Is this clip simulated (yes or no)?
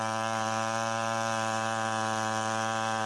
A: no